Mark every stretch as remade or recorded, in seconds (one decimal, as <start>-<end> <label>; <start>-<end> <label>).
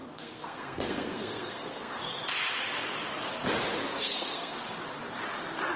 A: 0.0-2.0 remade; 2.0-4.0 recorded; 4.0-4.6 remade; 4.6-5.8 recorded